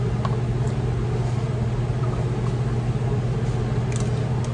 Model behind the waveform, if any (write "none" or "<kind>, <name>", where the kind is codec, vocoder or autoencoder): none